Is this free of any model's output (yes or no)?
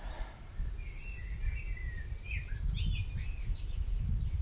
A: yes